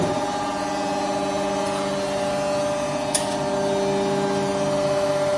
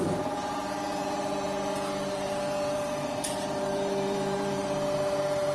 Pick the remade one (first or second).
second